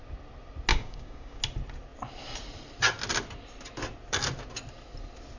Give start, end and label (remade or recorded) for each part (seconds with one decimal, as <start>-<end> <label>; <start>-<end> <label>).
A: 0.0-0.7 recorded; 0.7-1.4 remade; 1.4-5.4 recorded

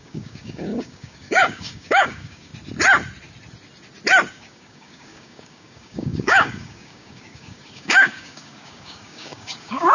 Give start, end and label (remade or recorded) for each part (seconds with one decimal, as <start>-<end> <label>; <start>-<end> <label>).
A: 0.0-2.5 remade; 2.5-4.3 recorded; 4.3-9.9 remade

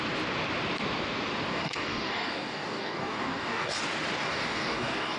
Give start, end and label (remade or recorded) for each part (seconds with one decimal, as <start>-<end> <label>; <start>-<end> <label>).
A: 0.0-1.5 recorded; 1.5-3.8 remade; 3.8-4.2 recorded; 4.2-5.2 remade

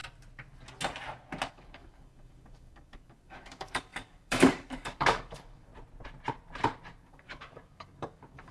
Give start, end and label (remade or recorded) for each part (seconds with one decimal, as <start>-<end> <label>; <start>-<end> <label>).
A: 0.0-1.5 recorded; 1.5-5.7 remade; 5.7-7.0 recorded; 7.0-8.5 remade

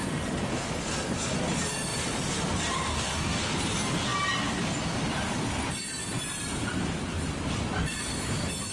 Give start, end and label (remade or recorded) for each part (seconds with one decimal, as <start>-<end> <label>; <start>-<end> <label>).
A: 0.0-2.9 recorded; 2.9-3.4 remade; 3.4-8.7 recorded